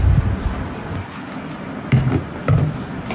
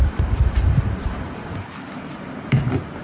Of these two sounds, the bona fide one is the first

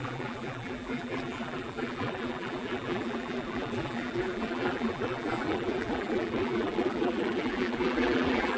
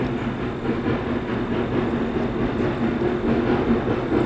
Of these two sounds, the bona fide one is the second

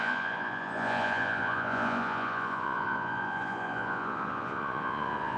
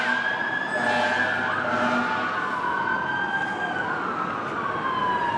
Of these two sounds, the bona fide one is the second